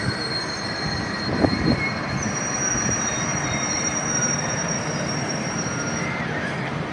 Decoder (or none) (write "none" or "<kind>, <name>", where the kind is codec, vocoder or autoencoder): vocoder, BigVGAN v2